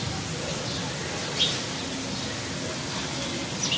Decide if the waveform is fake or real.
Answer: real